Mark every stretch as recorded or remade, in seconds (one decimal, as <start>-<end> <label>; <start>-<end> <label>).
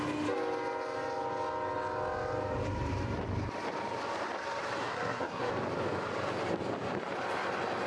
0.0-4.8 recorded; 4.8-5.5 remade; 5.5-7.9 recorded